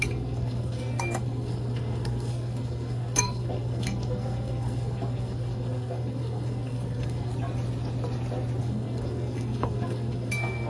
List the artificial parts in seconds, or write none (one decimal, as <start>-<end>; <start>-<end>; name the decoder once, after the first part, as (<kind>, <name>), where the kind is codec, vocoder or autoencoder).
0.0-7.3 (codec, SNAC); 8.6-10.7